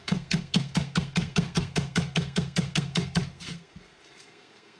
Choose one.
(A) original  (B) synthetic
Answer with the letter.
B